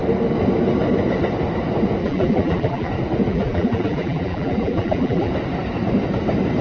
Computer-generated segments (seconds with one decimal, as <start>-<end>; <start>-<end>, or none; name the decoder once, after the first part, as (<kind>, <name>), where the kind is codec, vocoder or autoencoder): 2.0-2.9 (vocoder, BigVGAN v2); 3.3-5.3